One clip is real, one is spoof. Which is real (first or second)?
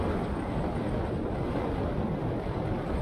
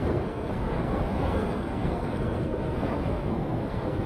first